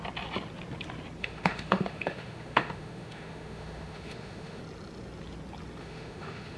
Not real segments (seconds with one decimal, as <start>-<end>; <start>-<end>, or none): 1.2-4.6; 5.8-6.6